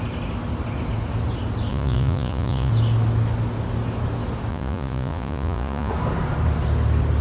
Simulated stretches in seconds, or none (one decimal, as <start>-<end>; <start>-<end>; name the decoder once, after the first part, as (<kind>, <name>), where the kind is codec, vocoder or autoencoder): 1.7-2.7 (vocoder, Vocos); 4.5-5.9